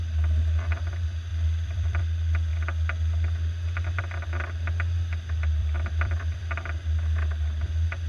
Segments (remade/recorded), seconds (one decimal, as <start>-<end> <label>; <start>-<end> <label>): 0.0-1.3 recorded; 1.3-2.0 remade; 2.0-5.6 recorded; 5.6-6.5 remade; 6.5-8.1 recorded